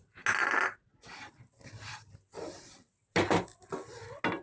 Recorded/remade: recorded